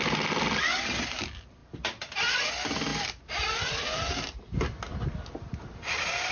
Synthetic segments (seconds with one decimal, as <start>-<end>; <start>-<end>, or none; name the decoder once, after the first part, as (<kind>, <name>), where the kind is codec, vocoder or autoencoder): none